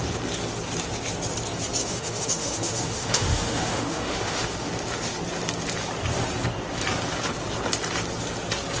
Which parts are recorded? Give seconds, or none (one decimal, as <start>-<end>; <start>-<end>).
0.0-1.8; 4.7-8.8